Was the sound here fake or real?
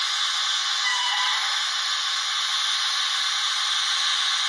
fake